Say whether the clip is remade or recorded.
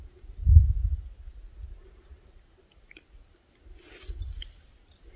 recorded